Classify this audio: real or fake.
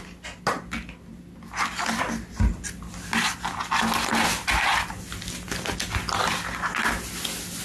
real